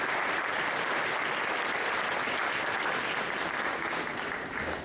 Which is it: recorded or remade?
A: recorded